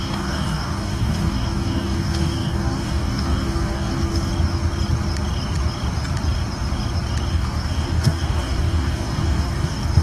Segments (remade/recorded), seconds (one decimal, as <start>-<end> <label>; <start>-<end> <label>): 0.0-4.3 remade; 4.3-7.3 recorded; 7.3-10.0 remade